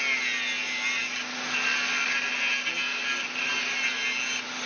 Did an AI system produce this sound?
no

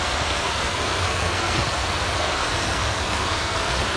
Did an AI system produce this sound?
yes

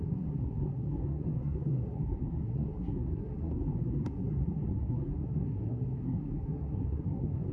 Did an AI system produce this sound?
yes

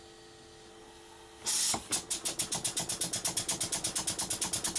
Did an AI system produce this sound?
no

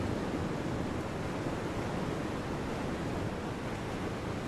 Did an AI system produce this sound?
no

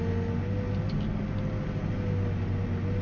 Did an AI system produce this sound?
no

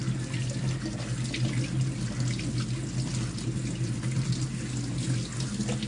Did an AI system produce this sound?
no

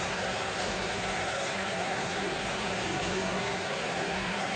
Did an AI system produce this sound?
yes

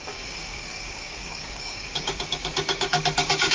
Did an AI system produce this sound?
yes